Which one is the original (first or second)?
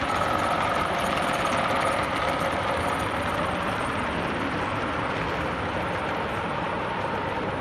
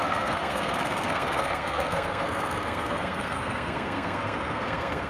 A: first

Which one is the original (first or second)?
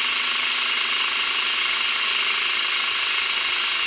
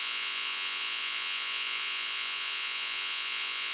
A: first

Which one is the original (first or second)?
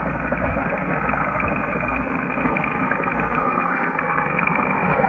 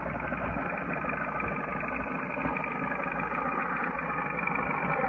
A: second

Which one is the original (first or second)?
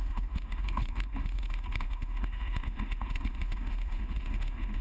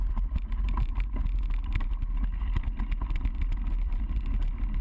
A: second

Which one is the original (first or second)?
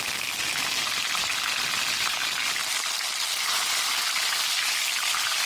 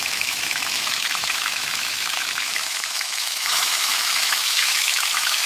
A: first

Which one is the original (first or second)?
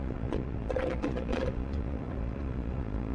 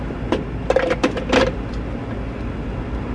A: second